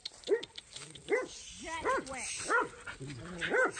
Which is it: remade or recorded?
recorded